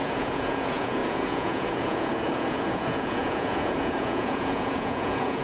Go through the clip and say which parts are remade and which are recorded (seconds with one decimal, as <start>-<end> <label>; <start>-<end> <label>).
0.0-5.4 remade